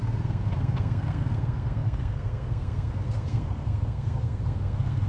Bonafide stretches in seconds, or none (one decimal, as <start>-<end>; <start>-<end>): none

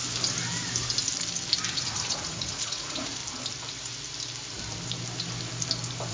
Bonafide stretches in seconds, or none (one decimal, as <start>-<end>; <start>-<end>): 0.0-1.7; 3.2-6.1

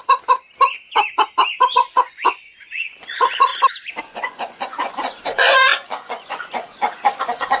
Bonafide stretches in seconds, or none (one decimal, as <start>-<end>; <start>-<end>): 0.0-1.7; 3.5-4.0

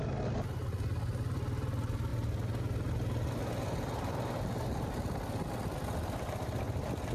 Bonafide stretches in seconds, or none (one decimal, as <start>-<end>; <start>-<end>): 0.0-7.1